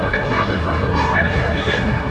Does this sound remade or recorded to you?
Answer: remade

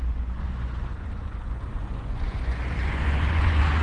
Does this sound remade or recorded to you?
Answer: remade